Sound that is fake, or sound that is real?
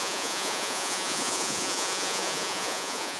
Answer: fake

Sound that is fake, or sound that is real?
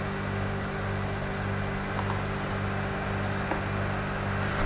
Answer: real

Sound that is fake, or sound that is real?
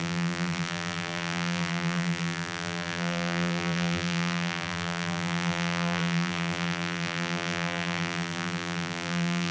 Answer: fake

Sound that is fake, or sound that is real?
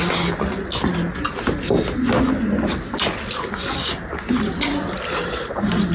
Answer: real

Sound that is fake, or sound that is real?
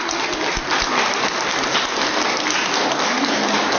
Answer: real